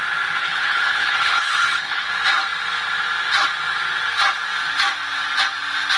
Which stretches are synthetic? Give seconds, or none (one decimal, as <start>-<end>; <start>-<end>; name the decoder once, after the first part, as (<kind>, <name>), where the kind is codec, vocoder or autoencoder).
0.4-2.1 (codec, HILCodec)